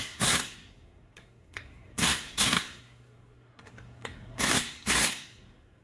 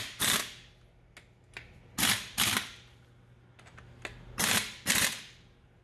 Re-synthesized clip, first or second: first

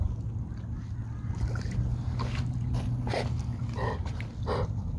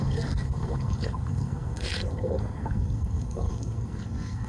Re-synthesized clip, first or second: second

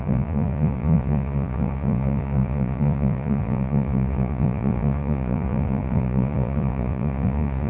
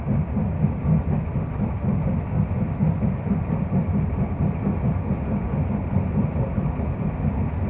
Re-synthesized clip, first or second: first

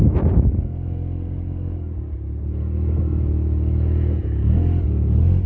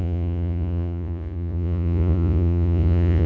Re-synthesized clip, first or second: second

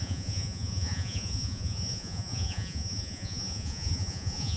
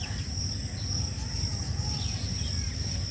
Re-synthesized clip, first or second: first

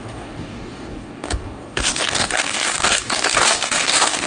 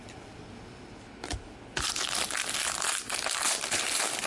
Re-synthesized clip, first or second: first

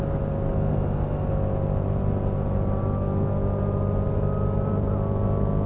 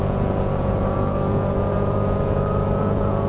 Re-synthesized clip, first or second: second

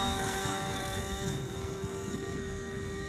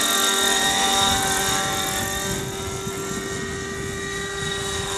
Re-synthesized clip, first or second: first